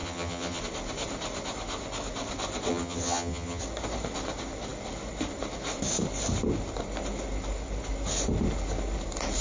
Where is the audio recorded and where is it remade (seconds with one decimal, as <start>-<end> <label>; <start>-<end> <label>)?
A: 0.0-0.6 remade; 0.6-2.7 recorded; 2.7-3.6 remade; 3.6-9.4 recorded